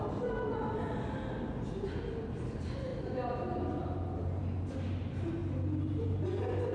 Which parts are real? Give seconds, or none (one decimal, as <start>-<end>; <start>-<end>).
0.0-6.7